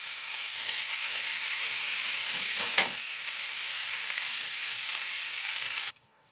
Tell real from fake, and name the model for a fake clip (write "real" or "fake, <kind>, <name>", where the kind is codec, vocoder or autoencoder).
fake, codec, DAC